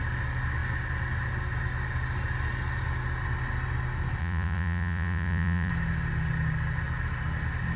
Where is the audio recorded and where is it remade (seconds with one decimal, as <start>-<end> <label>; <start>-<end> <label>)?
0.0-4.2 recorded; 4.2-5.7 remade; 5.7-7.8 recorded